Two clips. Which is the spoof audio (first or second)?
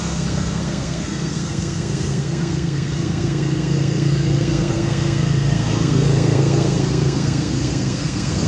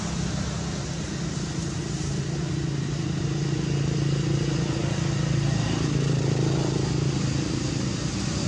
first